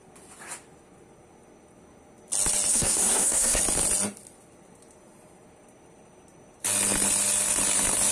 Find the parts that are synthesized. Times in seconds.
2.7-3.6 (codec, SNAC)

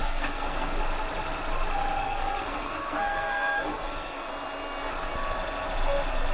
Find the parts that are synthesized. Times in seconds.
0.0-0.8 (codec, SNAC); 2.0-4.3

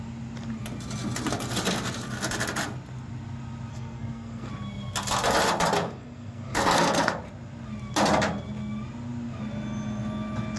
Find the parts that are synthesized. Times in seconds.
3.7-4.5 (codec, SNAC); 5.8-7.2

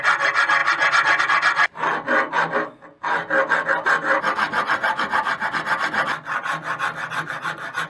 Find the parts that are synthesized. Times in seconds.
none

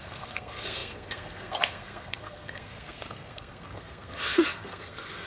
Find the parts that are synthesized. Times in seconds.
0.0-5.3 (codec, SNAC)